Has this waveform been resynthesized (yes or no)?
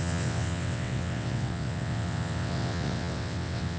yes